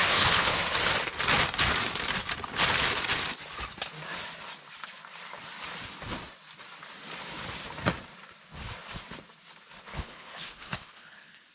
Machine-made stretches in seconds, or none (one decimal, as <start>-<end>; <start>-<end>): 0.0-0.6; 9.9-11.5